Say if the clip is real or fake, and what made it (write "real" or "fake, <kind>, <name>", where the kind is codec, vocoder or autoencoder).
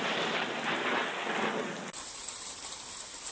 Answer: real